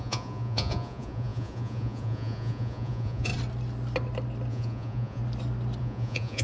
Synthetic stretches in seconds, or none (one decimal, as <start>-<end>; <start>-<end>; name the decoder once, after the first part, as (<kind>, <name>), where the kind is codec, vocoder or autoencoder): 0.0-3.3 (vocoder, Vocos); 4.5-5.2; 5.8-6.4